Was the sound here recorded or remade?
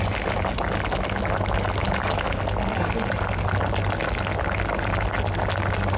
recorded